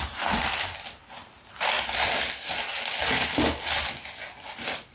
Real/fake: real